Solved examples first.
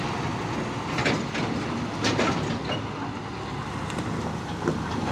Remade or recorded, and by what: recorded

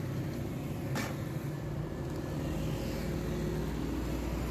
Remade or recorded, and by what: recorded